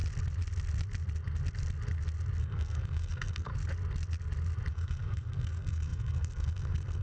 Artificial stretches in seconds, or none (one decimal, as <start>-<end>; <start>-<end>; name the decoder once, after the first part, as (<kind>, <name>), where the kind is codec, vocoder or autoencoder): 2.4-3.5 (codec, SNAC); 4.7-7.0